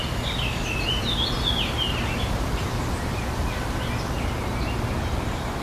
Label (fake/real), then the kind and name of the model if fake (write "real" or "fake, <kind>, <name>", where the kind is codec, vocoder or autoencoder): real